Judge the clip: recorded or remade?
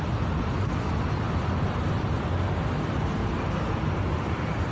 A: recorded